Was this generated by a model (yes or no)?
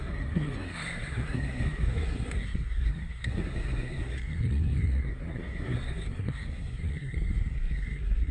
yes